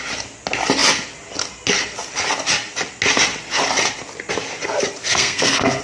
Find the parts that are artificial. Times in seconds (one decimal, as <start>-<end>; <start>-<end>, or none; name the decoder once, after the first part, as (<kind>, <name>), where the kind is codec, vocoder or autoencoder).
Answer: 5.0-5.8 (codec, SNAC)